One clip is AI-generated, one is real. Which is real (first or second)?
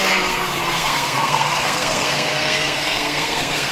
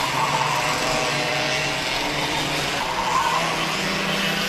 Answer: second